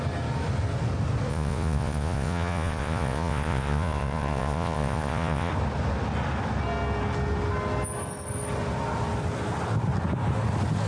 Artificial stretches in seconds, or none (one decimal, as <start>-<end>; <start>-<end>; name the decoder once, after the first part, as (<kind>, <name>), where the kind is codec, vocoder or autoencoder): 1.3-5.5 (vocoder, Vocos)